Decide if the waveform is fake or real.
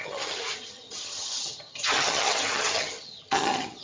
fake